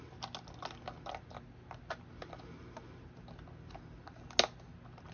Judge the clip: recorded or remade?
recorded